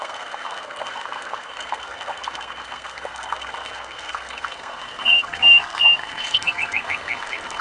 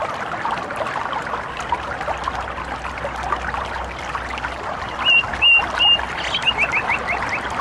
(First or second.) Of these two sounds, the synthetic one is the first